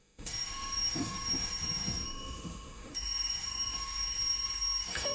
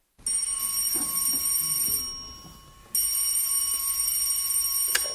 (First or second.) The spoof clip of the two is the first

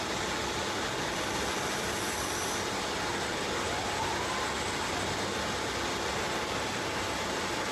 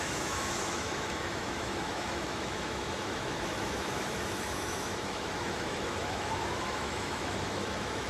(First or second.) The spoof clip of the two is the second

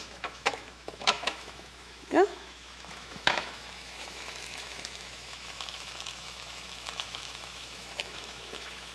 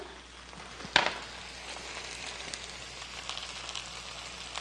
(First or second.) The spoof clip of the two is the first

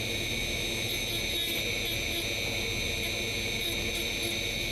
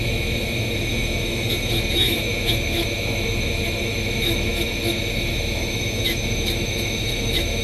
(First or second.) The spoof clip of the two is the second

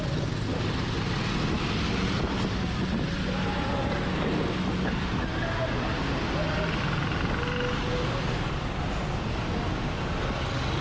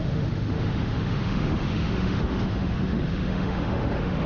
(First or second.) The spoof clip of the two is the second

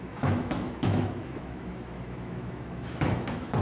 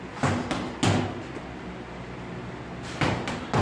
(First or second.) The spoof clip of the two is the first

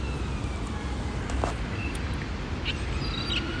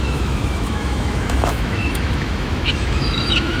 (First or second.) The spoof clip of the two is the second